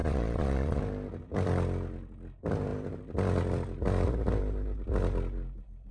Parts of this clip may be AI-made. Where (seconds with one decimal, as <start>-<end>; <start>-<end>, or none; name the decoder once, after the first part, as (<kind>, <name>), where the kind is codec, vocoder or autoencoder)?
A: 0.0-0.8 (vocoder, Vocos)